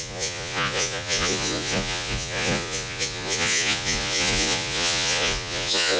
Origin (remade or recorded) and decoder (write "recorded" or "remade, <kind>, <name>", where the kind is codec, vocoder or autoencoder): remade, vocoder, Vocos